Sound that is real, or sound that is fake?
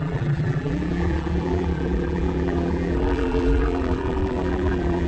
fake